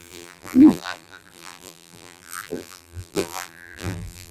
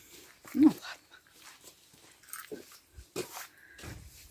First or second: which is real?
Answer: second